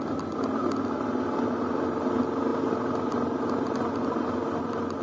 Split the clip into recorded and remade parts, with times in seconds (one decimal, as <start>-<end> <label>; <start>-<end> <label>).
0.0-5.0 recorded